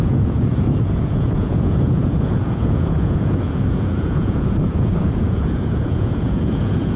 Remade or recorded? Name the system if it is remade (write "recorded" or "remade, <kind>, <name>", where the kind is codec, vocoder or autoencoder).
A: remade, vocoder, Vocos